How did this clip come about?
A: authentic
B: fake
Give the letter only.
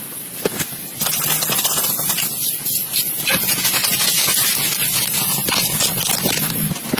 A